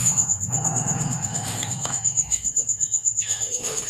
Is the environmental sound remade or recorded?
remade